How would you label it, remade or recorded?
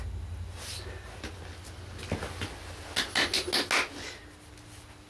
recorded